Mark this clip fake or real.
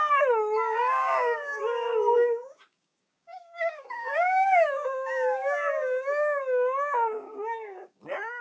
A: fake